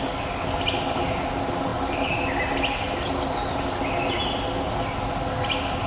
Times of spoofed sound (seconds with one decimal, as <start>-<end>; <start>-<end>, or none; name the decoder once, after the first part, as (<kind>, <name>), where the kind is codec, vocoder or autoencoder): none